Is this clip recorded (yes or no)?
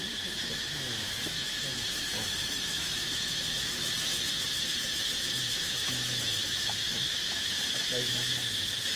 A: no